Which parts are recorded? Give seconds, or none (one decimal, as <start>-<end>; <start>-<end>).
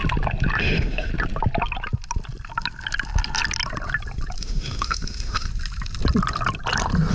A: 0.0-0.6; 1.1-4.4; 5.5-7.1